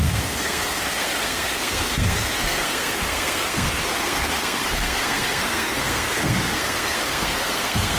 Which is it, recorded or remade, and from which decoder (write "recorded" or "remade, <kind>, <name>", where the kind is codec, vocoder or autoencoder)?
remade, codec, SNAC